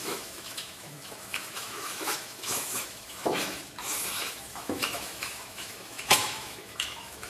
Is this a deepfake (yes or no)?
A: yes